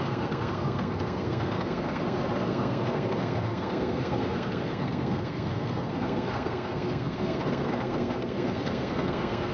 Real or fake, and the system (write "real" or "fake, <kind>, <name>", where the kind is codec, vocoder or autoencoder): fake, codec, SNAC